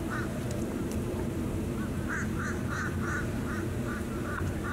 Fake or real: real